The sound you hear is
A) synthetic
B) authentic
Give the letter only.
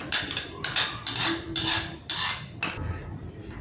B